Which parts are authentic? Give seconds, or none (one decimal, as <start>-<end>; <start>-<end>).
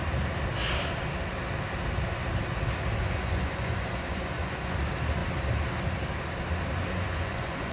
0.0-3.0; 4.8-6.9